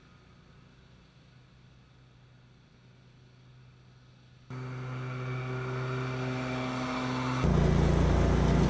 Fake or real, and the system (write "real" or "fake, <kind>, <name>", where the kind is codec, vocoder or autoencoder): real